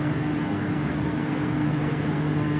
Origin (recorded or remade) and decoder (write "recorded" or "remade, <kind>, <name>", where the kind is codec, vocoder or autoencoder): remade, codec, SNAC